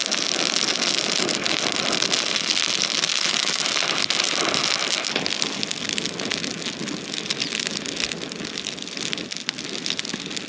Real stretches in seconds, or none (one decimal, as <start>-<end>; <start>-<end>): 0.0-3.1; 3.6-10.5